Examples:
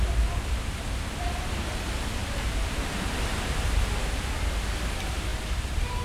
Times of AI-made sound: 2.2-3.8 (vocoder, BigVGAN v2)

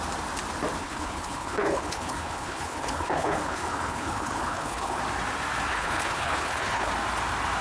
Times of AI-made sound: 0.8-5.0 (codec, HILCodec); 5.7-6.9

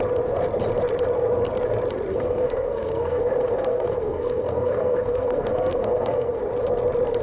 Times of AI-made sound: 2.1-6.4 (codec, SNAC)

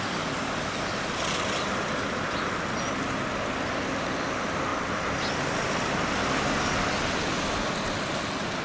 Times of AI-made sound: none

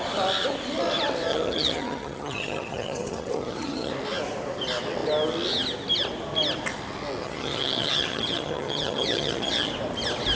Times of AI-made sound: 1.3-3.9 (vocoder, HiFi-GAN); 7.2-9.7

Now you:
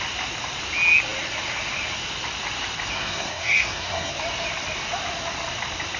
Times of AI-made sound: 2.9-4.1 (codec, SNAC)